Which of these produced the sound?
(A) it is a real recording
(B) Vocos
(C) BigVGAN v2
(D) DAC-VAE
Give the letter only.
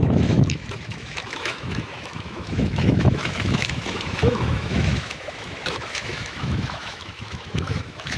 D